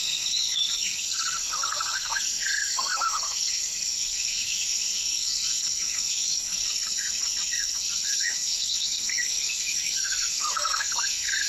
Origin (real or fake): fake